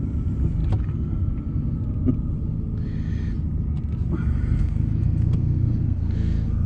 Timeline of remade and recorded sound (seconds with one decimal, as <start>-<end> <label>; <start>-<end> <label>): 0.0-4.6 recorded; 4.6-6.7 remade